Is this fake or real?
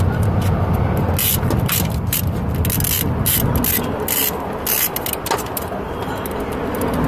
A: real